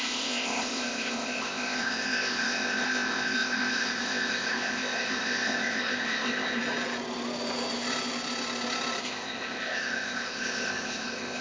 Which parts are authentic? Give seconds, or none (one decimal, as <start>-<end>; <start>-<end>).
6.6-9.0